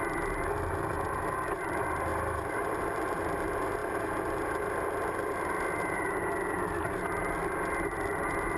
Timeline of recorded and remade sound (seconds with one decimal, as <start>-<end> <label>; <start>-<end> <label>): 0.0-2.1 recorded; 2.1-3.2 remade; 3.2-8.6 recorded